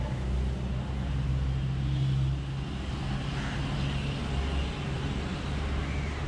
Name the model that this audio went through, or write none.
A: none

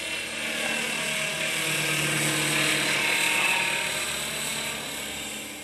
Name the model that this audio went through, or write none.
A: none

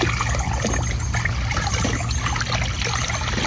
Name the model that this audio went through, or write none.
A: none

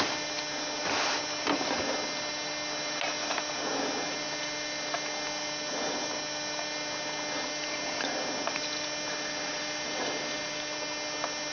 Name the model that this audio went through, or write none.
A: none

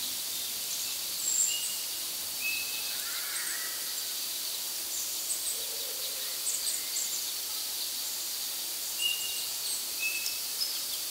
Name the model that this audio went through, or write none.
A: none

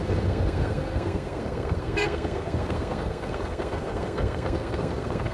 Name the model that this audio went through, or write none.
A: codec, SNAC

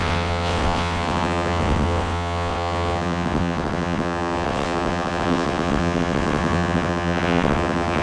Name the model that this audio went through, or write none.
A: vocoder, WaveNeXt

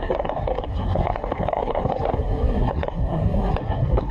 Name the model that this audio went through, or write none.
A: codec, SNAC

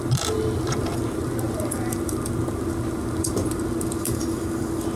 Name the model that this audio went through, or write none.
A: vocoder, BigVGAN v2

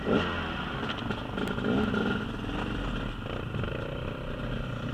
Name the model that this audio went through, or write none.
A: none